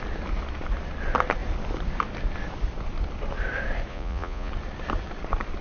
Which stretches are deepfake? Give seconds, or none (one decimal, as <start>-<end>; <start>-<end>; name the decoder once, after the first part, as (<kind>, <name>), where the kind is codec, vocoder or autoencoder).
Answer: 3.9-4.5 (vocoder, Vocos)